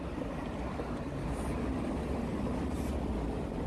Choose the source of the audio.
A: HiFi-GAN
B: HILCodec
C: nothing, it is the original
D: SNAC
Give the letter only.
C